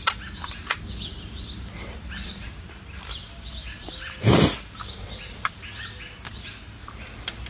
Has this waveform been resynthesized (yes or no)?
no